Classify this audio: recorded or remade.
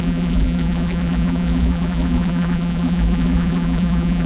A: remade